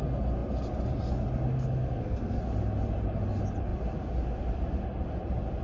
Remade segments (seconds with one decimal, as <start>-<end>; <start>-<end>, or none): 1.5-2.4